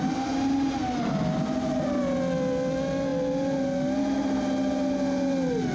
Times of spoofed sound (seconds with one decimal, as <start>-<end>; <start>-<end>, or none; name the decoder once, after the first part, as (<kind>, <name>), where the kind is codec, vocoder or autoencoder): none